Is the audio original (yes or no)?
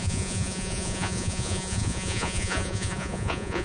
no